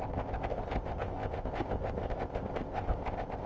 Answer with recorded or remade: remade